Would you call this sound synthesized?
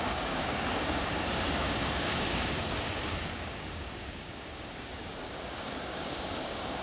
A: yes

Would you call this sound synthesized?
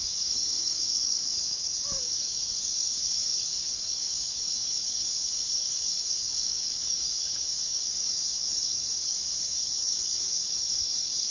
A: yes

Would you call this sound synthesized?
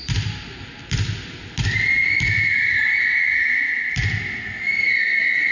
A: no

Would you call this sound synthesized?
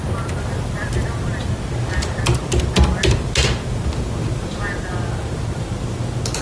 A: no